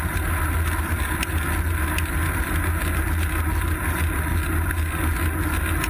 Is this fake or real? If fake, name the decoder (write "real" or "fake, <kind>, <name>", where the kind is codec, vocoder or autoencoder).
real